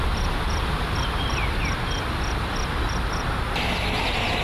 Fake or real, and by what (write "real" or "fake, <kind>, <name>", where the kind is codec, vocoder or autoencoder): real